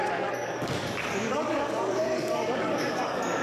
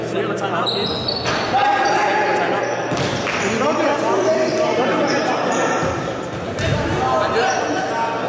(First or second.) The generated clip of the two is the first